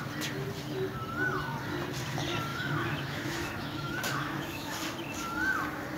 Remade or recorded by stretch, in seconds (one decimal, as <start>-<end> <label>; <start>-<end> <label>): 0.0-2.5 recorded; 2.5-4.7 remade; 4.7-6.0 recorded